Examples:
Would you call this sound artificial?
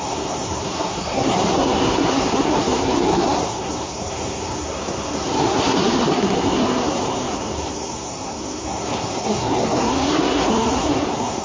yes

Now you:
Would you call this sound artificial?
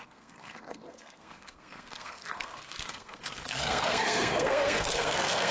yes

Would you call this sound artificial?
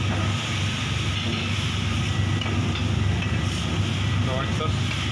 no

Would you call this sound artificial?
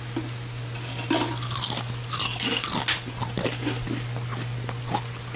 no